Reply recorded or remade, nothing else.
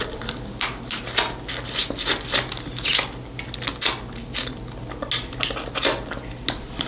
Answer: recorded